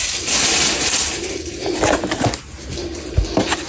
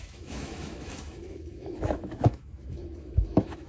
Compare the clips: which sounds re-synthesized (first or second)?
second